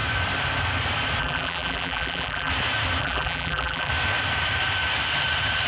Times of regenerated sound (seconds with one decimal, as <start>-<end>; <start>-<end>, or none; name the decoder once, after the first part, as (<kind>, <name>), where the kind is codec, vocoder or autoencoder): 1.2-2.5 (vocoder, BigVGAN v2); 3.0-3.9